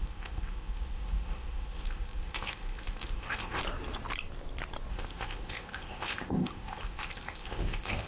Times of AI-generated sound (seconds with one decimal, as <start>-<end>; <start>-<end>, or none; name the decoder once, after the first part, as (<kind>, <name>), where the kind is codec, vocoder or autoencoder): 0.0-3.6 (codec, ZipCodec); 4.9-8.1